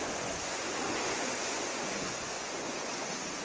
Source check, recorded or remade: remade